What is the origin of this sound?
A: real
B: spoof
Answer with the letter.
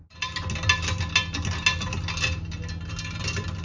A